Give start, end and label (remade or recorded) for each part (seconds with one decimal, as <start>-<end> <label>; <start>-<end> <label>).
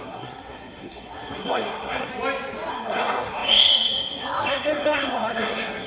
0.0-2.1 remade; 2.1-2.7 recorded; 2.7-5.9 remade